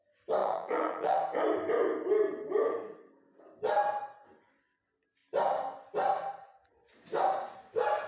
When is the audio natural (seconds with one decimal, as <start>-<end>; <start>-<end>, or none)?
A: 0.0-0.4; 1.2-8.1